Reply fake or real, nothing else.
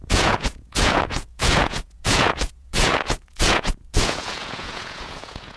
fake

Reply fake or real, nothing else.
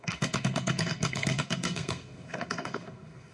fake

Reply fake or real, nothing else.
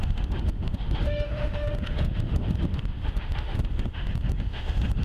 fake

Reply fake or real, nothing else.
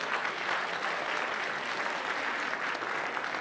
real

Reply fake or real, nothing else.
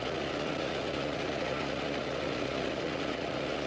fake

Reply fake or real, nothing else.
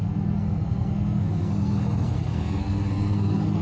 fake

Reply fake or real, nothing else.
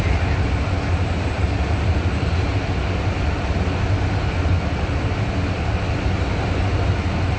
real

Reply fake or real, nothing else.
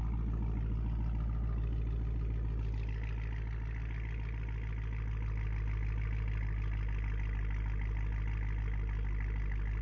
real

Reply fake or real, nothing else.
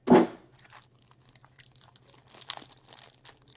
real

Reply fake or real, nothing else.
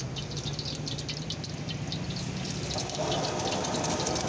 real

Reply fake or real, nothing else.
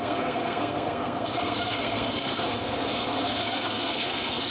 fake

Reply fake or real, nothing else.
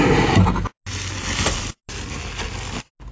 real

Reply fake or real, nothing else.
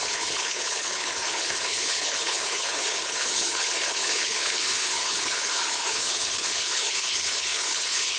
fake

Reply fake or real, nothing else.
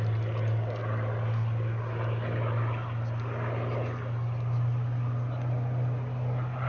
real